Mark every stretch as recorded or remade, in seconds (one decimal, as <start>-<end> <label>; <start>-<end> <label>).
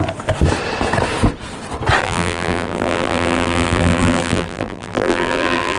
0.0-2.0 recorded; 2.0-5.8 remade